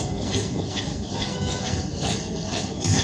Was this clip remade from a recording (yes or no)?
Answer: yes